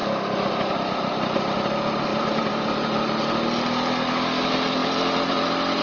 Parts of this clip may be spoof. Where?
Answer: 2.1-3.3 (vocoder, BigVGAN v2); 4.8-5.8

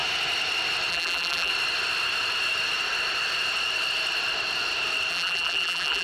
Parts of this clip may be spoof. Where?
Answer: 0.9-1.5 (vocoder, BigVGAN v2); 5.1-6.0

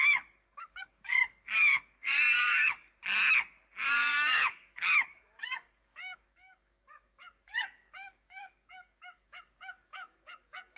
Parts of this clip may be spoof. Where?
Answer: 0.0-3.0 (codec, DAC); 3.9-10.8

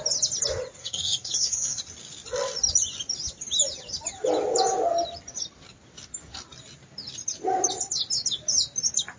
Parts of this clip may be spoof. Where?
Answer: 0.8-1.8 (codec, SNAC)

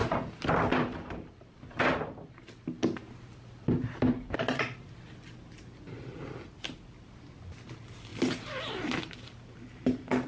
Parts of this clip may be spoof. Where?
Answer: none

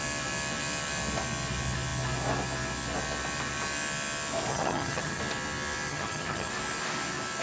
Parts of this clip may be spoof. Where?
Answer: 4.5-5.2 (vocoder, HiFi-GAN); 5.9-6.5